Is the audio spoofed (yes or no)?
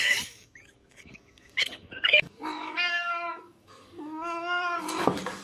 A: yes